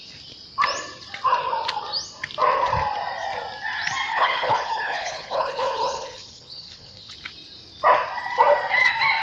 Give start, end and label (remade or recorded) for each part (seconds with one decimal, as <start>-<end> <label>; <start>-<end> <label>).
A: 0.0-4.1 recorded; 4.1-7.1 remade; 7.1-9.2 recorded